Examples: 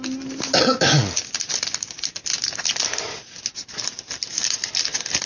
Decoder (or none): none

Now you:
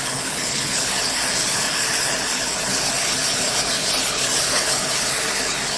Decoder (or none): codec, HILCodec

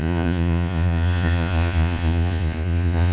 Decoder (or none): vocoder, Vocos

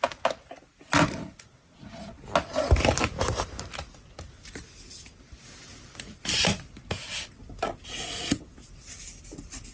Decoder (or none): none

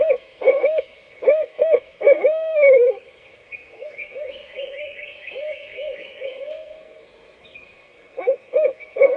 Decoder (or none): codec, SNAC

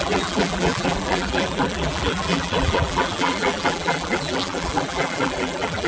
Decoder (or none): vocoder, BigVGAN v2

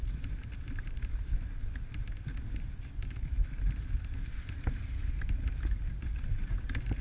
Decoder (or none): none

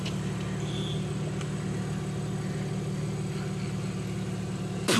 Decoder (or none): none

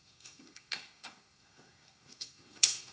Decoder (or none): codec, SNAC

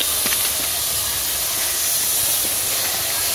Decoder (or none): none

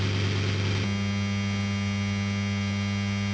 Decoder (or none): none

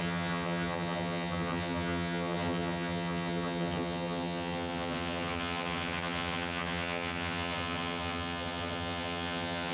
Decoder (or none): vocoder, HiFi-GAN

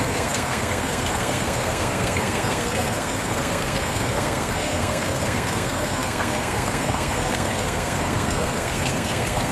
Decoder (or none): codec, SNAC